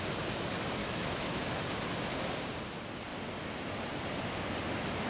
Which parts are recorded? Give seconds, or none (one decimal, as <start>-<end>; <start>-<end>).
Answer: 0.0-0.8; 1.4-5.1